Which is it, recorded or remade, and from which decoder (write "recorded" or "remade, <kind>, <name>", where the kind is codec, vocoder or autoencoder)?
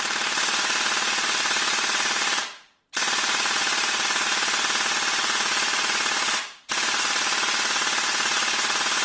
recorded